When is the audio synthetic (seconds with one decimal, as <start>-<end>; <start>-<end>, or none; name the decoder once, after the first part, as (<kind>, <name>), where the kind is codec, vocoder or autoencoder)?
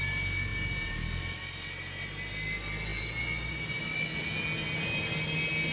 none